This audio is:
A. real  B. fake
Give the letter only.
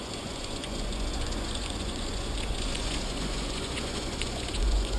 B